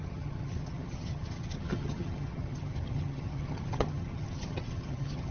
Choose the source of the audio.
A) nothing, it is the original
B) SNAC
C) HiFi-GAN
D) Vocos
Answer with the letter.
C